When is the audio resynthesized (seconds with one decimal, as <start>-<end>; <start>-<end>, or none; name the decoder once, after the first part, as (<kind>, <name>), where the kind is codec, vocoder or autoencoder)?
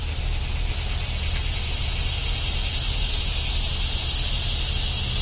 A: none